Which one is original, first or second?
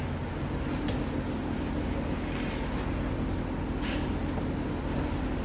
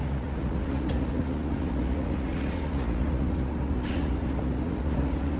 first